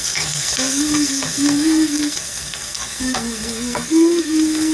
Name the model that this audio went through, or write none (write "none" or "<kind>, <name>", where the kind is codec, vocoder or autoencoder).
codec, SNAC